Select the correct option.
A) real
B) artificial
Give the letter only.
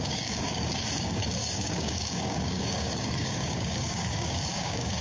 B